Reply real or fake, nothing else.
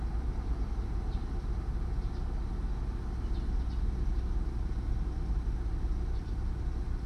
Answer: real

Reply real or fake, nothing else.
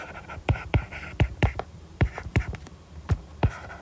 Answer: fake